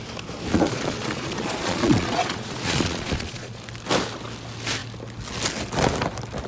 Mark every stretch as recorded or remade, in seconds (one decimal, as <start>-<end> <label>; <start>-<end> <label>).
0.0-0.5 recorded; 0.5-3.6 remade; 3.6-6.5 recorded